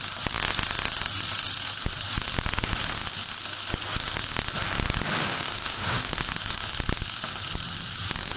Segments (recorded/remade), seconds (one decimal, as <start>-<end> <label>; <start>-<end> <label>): 0.0-5.2 recorded; 5.2-6.3 remade; 6.3-8.4 recorded